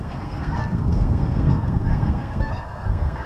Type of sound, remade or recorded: remade